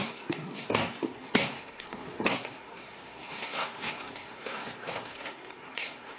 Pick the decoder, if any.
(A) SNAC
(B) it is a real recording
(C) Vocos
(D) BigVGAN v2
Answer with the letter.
A